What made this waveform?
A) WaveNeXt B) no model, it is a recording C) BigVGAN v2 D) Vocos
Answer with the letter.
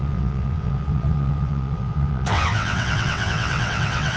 A